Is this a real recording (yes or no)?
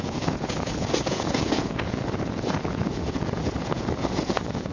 no